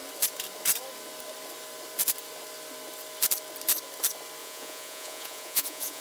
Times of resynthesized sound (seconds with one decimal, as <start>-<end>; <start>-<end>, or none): 4.4-6.0